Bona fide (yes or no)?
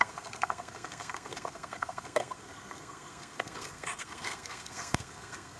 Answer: no